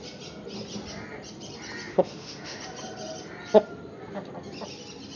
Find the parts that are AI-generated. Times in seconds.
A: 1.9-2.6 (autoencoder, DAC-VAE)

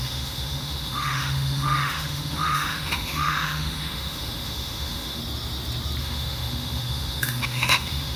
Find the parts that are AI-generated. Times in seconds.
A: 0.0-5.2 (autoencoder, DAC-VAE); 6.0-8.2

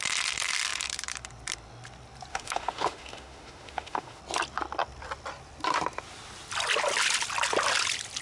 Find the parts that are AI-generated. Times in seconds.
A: 2.3-4.2 (autoencoder, DAC-VAE)